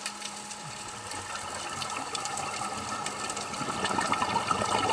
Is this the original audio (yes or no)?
yes